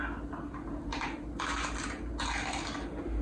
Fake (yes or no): no